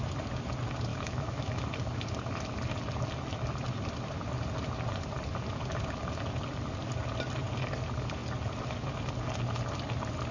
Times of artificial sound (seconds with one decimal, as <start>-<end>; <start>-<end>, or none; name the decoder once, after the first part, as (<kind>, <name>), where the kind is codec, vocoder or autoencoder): 0.9-1.7 (autoencoder, DAC-VAE)